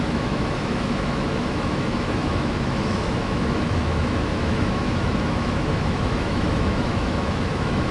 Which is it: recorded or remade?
remade